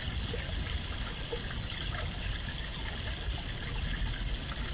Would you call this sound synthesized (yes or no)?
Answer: no